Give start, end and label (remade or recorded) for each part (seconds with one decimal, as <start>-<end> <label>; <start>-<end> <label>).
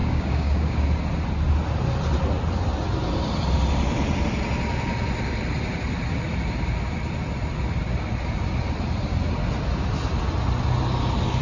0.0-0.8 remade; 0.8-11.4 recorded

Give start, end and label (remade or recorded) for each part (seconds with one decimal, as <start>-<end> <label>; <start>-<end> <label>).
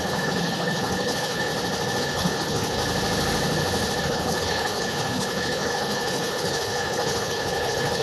0.0-1.5 remade; 1.5-2.0 recorded; 2.0-2.8 remade; 2.8-4.0 recorded; 4.0-8.0 remade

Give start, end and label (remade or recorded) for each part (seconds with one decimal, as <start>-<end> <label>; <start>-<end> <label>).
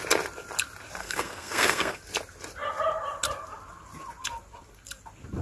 0.0-1.0 recorded; 1.0-2.0 remade; 2.0-5.4 recorded